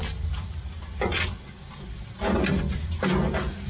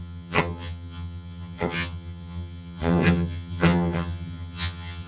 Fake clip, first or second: second